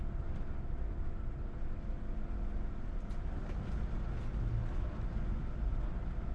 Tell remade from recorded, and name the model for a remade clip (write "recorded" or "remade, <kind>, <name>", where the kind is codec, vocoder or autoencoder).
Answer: recorded